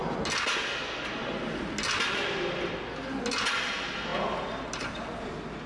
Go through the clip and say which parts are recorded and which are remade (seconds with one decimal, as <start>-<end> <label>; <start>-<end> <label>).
0.0-5.7 recorded